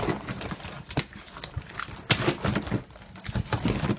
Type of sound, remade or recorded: recorded